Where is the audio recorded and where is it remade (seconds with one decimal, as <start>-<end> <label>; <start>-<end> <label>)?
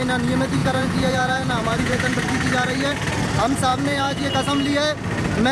0.0-0.6 recorded; 0.6-2.2 remade; 2.2-3.7 recorded; 3.7-4.3 remade; 4.3-5.5 recorded